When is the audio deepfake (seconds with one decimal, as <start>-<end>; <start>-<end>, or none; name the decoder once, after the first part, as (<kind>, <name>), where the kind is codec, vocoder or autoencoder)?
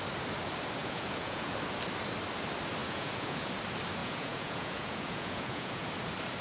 0.8-1.5 (vocoder, Vocos); 2.8-3.5; 4.0-5.9